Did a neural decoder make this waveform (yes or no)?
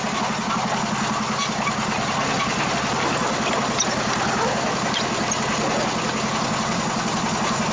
no